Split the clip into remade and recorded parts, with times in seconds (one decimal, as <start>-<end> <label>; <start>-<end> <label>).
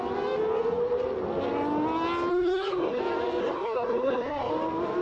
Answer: 0.0-2.3 recorded; 2.3-3.0 remade; 3.0-3.4 recorded; 3.4-4.5 remade; 4.5-5.0 recorded